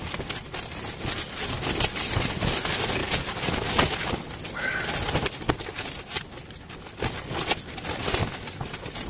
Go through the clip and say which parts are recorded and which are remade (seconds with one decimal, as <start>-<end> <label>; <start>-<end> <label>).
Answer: 0.0-9.1 recorded